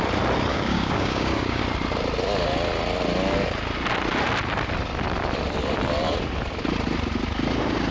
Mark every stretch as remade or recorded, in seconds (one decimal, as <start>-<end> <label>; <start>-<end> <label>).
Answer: 0.0-0.5 recorded; 0.5-1.6 remade; 1.6-7.9 recorded